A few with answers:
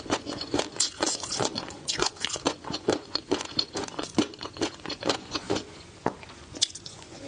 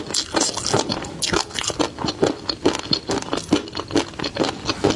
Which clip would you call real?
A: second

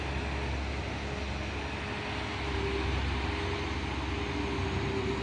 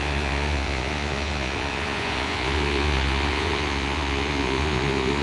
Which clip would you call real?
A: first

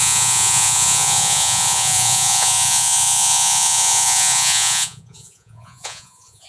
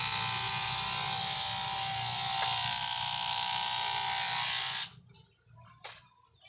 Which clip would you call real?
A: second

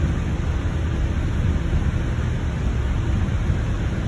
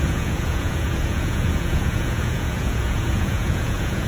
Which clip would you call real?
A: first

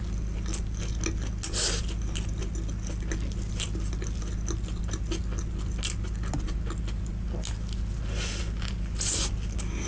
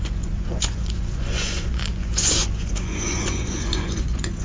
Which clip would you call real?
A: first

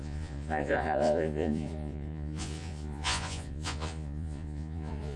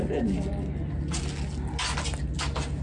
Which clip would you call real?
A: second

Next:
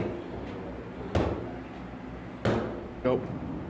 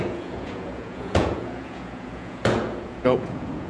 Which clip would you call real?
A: first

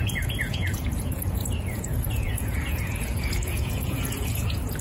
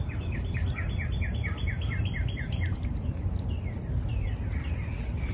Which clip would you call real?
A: second